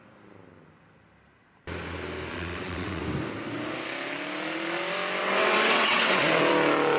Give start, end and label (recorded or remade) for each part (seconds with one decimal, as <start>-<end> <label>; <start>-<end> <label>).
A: 0.0-2.3 recorded; 2.3-3.0 remade; 3.0-5.2 recorded; 5.2-6.4 remade; 6.4-7.0 recorded